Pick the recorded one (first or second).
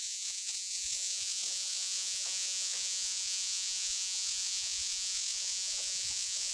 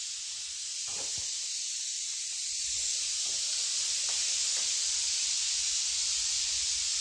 second